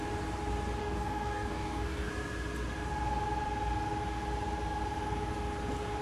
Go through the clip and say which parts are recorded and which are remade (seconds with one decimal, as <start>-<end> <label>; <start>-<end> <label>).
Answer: 0.0-0.8 recorded; 0.8-2.1 remade; 2.1-6.0 recorded

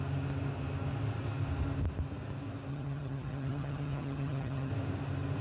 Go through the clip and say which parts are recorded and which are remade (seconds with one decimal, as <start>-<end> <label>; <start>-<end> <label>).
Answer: 0.0-2.7 recorded; 2.7-4.7 remade; 4.7-5.4 recorded

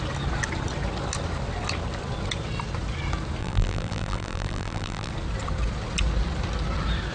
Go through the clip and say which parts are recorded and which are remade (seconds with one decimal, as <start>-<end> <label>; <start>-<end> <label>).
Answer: 0.0-3.4 recorded; 3.4-5.1 remade; 5.1-7.1 recorded

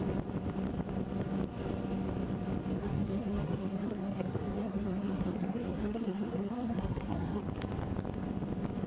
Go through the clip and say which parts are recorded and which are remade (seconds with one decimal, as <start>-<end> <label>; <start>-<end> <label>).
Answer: 0.0-2.8 recorded; 2.8-7.4 remade; 7.4-8.9 recorded